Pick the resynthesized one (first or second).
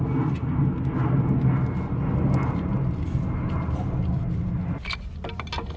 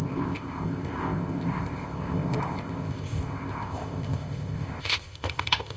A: second